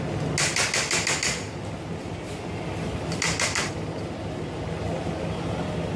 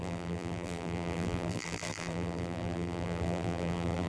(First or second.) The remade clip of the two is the second